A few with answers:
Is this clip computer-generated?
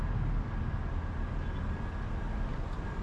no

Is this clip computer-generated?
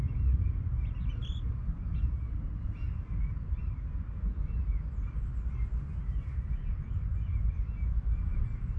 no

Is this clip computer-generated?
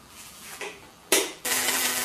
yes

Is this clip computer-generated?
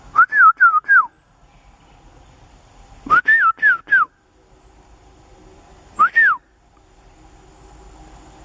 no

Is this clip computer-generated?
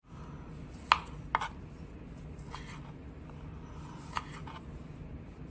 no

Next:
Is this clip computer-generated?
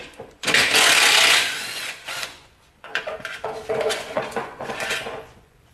yes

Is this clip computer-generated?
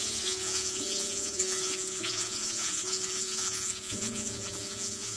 yes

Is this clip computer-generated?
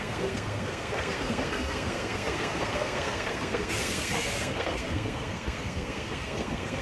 yes